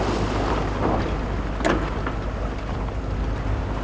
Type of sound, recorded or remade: recorded